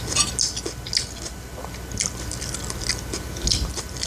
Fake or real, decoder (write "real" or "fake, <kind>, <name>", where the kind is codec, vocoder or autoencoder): real